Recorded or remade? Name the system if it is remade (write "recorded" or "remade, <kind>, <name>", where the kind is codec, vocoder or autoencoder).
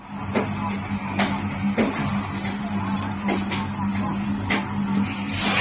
recorded